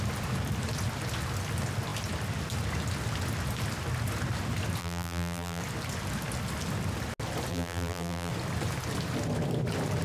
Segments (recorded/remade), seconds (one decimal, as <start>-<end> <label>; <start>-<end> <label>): 0.0-4.8 recorded; 4.8-5.6 remade; 5.6-7.5 recorded; 7.5-8.3 remade; 8.3-10.0 recorded